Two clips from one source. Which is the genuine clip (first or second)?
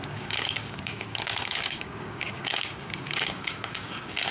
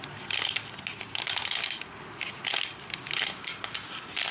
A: second